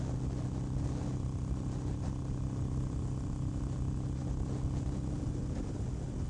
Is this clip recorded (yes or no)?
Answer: yes